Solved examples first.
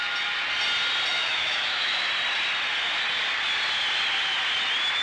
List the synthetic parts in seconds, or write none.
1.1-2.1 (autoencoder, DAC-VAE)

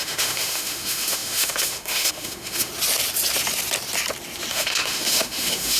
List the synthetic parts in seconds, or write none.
0.0-2.7 (autoencoder, DAC-VAE); 4.5-5.8

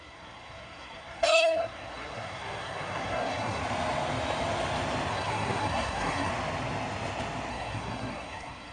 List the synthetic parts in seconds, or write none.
0.0-3.6 (codec, SNAC); 5.1-6.3; 7.5-8.7